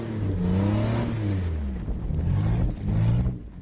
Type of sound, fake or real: real